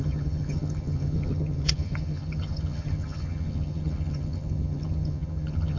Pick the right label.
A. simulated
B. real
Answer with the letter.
A